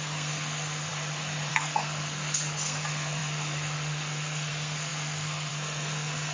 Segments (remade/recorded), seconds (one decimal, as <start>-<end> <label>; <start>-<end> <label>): 0.0-0.9 remade; 0.9-1.5 recorded; 1.5-6.3 remade